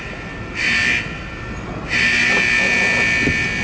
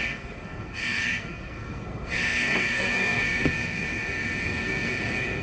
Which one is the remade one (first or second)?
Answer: second